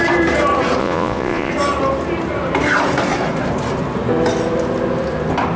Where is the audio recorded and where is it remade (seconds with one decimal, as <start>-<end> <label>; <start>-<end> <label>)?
0.0-0.8 recorded; 0.8-1.5 remade; 1.5-5.6 recorded

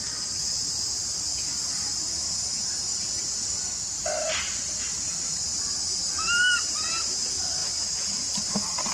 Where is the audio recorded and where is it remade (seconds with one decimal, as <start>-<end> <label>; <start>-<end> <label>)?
0.0-2.9 recorded; 2.9-3.6 remade; 3.6-7.6 recorded; 7.6-8.5 remade; 8.5-8.9 recorded

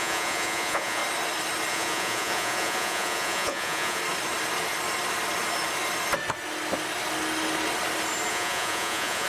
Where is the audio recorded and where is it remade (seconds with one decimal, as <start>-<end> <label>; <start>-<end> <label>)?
0.0-1.0 remade; 1.0-1.7 recorded; 1.7-4.0 remade; 4.0-8.3 recorded; 8.3-9.3 remade

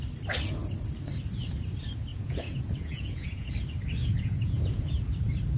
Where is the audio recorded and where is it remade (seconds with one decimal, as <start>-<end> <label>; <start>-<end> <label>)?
0.0-2.1 recorded; 2.1-3.5 remade; 3.5-4.0 recorded; 4.0-4.9 remade; 4.9-5.6 recorded

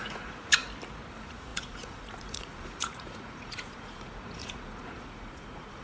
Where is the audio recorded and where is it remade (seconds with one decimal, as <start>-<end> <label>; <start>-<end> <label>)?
0.0-0.6 remade; 0.6-1.1 recorded; 1.1-5.8 remade

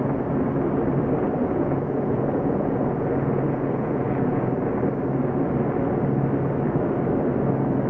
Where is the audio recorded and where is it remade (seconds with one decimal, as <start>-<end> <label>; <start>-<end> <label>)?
0.0-1.4 recorded; 1.4-4.5 remade; 4.5-7.9 recorded